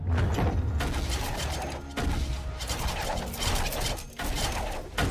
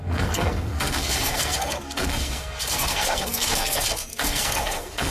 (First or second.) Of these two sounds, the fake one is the second